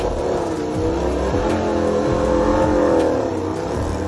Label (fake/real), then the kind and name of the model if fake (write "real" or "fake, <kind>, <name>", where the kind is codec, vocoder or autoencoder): real